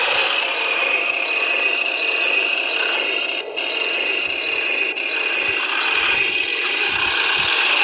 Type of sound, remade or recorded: recorded